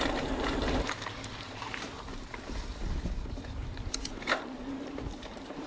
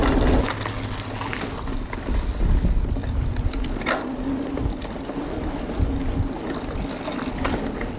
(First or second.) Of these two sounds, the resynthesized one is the first